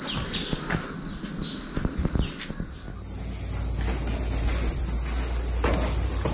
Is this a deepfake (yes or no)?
no